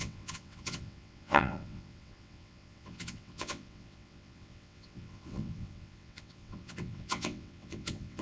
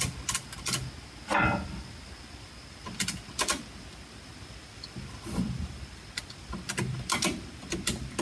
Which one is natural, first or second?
second